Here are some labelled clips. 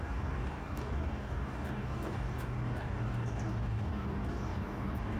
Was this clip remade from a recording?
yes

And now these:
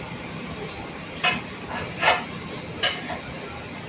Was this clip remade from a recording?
no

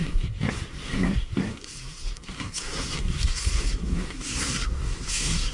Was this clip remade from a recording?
yes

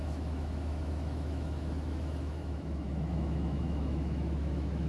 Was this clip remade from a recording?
yes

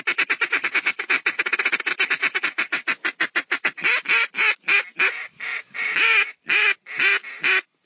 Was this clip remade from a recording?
no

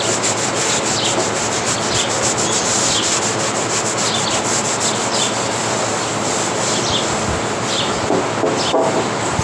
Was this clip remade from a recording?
no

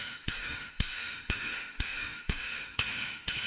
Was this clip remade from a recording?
yes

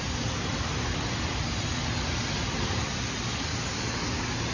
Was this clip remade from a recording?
no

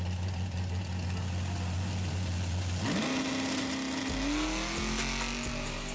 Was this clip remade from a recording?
no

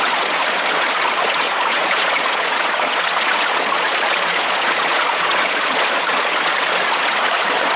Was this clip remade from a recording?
yes